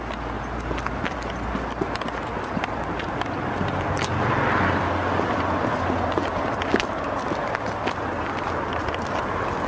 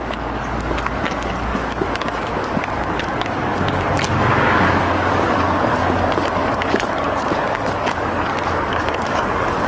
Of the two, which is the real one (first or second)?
first